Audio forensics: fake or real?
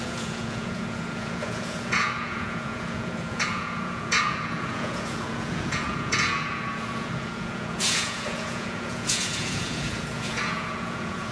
fake